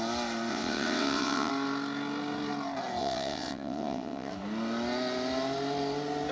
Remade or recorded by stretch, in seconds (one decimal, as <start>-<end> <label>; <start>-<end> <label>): 0.0-0.5 recorded; 0.5-1.5 remade; 1.5-3.0 recorded; 3.0-4.3 remade; 4.3-6.3 recorded